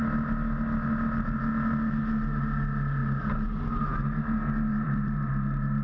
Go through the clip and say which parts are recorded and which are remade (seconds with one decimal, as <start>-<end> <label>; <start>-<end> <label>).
0.0-4.7 recorded; 4.7-5.3 remade; 5.3-5.8 recorded